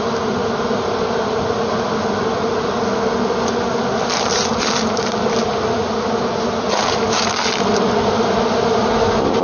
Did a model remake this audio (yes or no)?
no